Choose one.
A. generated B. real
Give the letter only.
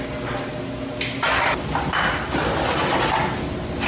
B